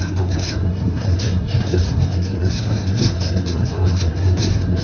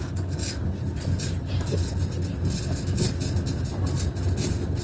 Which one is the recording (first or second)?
second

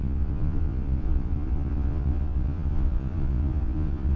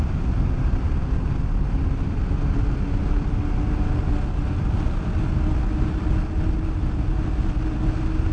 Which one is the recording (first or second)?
second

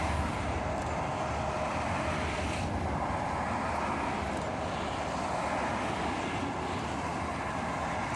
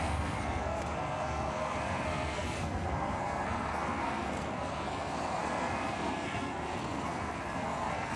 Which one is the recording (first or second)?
first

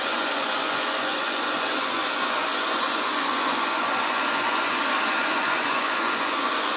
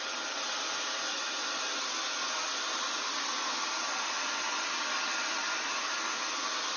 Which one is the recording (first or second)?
second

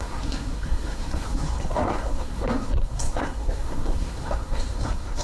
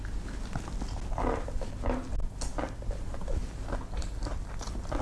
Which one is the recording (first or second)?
second